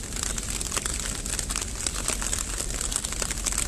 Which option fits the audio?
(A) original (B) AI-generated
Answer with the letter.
B